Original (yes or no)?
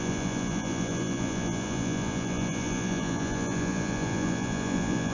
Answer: no